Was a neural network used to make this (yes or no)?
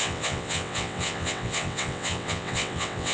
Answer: yes